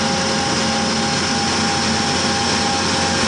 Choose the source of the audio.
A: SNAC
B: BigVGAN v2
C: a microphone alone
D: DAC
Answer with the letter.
C